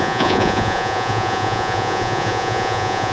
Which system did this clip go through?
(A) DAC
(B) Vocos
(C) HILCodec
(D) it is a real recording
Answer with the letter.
B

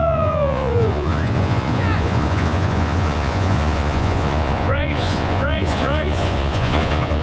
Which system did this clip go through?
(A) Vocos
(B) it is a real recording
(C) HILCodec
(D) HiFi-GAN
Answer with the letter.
A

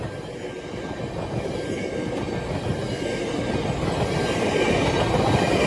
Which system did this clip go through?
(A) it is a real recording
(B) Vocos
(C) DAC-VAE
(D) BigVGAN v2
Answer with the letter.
A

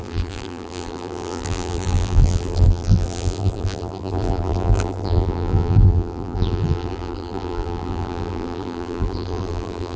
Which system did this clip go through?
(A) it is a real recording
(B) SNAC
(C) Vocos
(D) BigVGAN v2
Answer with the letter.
D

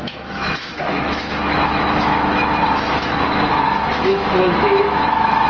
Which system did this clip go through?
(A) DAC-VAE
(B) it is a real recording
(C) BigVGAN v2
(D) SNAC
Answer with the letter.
A